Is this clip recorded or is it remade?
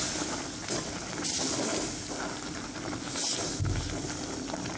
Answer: recorded